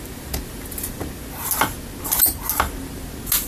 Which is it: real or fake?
real